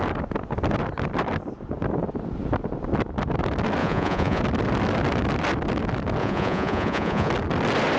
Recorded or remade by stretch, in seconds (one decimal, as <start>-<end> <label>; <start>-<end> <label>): 0.0-3.8 recorded; 3.8-4.4 remade; 4.4-6.2 recorded; 6.2-7.3 remade; 7.3-8.0 recorded

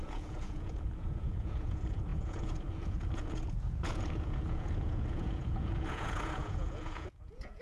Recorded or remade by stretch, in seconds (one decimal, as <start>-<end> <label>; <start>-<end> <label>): 0.0-7.6 remade